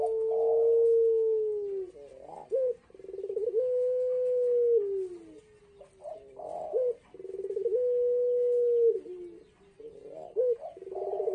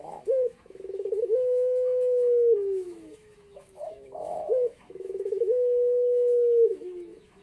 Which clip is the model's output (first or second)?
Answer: second